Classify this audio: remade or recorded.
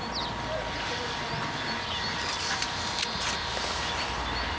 recorded